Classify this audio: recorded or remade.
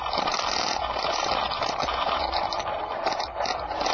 remade